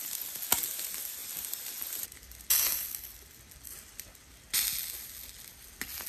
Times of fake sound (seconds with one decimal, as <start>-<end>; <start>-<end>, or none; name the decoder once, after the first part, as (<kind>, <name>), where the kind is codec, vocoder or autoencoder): none